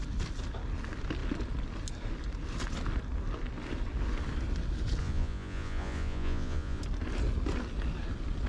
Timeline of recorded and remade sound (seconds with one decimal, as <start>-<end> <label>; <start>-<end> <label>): 0.0-5.0 recorded; 5.0-6.8 remade; 6.8-8.5 recorded